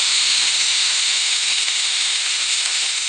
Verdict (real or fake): fake